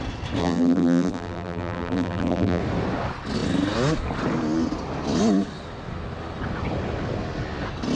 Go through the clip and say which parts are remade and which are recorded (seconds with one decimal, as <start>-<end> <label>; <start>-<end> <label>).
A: 0.0-0.4 recorded; 0.4-2.6 remade; 2.6-8.0 recorded